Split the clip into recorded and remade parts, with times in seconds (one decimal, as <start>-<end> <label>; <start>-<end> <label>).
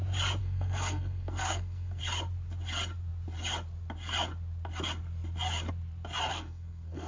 0.0-0.4 recorded; 0.4-2.0 remade; 2.0-6.3 recorded; 6.3-7.1 remade